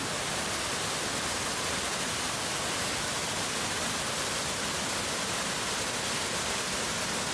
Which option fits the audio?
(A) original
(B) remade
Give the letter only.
A